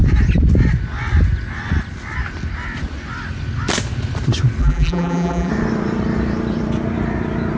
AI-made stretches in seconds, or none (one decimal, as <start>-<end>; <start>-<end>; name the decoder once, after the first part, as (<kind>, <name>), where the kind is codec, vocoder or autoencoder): 4.6-5.5 (vocoder, BigVGAN v2)